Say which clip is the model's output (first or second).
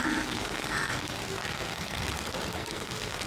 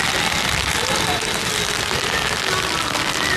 first